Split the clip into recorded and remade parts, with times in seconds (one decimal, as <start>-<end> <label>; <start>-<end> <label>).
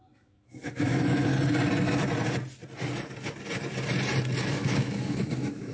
0.0-1.3 remade; 1.3-4.4 recorded; 4.4-5.7 remade